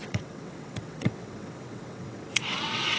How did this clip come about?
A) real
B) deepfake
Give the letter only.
B